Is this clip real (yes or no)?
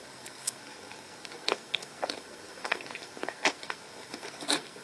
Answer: no